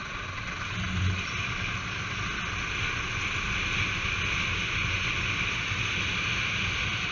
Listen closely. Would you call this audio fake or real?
real